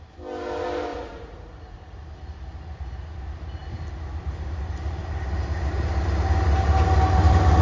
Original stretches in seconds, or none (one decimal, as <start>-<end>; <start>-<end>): 0.0-0.9; 2.1-7.6